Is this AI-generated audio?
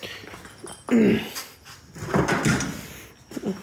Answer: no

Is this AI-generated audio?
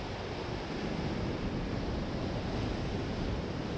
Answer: no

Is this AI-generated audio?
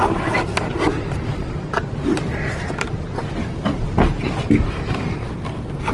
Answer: no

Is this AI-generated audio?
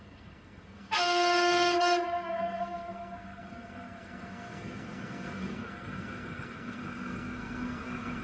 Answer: yes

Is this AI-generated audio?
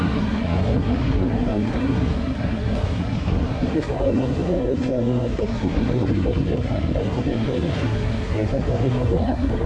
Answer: yes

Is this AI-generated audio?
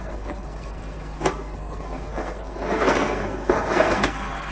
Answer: yes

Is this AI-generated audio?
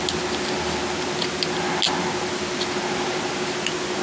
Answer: no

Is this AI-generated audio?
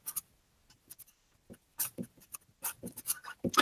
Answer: no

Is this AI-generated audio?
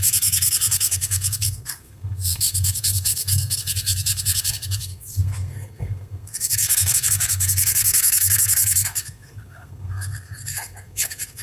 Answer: yes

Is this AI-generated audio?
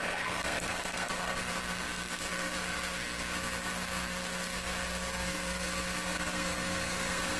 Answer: yes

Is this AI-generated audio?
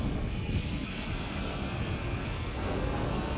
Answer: yes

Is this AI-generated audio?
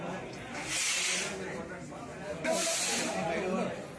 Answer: no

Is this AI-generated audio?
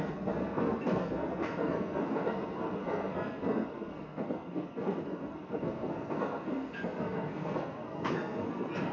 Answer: yes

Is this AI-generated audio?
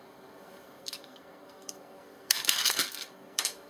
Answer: yes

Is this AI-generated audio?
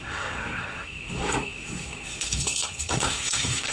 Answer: yes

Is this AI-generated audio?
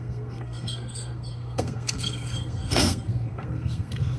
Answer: yes